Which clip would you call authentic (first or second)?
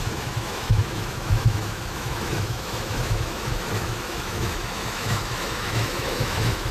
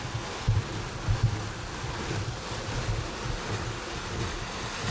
second